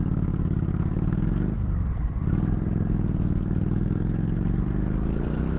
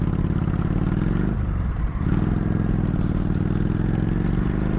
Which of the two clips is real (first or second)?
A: second